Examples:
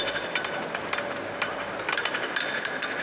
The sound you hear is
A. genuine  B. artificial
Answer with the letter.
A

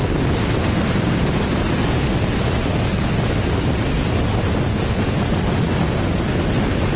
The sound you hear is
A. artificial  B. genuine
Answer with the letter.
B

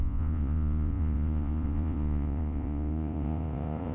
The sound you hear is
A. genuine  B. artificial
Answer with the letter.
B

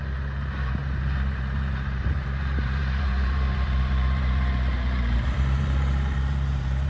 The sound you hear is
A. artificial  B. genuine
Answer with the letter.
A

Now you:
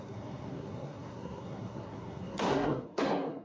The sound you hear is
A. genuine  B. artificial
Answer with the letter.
B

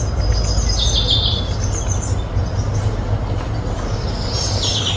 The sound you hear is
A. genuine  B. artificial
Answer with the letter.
A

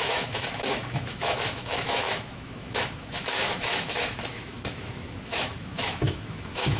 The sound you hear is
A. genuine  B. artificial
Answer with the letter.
B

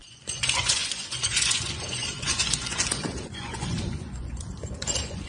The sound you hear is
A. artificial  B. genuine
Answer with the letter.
A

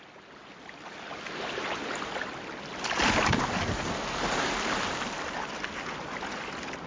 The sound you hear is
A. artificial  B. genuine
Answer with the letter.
B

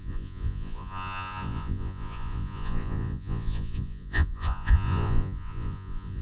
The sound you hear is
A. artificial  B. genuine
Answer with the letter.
A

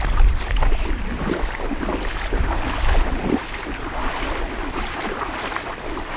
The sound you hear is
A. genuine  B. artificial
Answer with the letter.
A